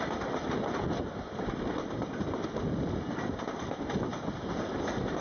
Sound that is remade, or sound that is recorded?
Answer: recorded